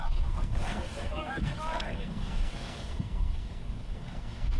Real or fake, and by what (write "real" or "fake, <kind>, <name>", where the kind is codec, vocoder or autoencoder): fake, codec, SNAC